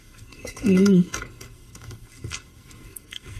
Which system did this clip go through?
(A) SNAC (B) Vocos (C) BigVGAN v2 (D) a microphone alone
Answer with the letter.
A